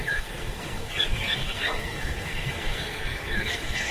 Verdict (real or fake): fake